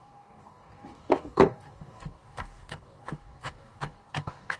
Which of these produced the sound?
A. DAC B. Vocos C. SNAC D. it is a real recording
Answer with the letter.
A